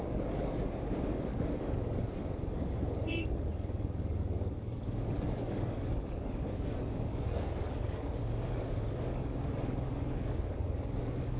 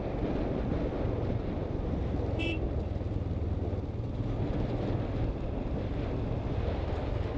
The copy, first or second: first